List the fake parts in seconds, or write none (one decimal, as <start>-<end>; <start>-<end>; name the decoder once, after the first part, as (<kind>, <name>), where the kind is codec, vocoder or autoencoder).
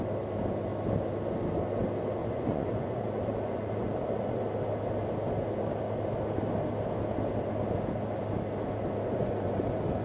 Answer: 2.2-4.4 (vocoder, Vocos); 9.1-9.6